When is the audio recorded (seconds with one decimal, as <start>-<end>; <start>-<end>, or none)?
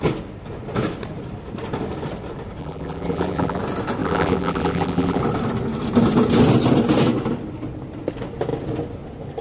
0.0-2.6; 3.6-4.0; 5.2-9.4